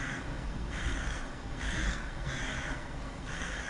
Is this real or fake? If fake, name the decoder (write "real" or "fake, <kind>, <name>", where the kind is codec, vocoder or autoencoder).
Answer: fake, codec, SNAC